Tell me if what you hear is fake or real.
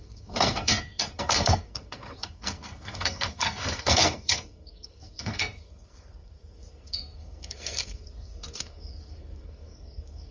fake